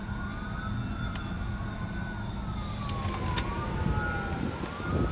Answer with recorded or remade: recorded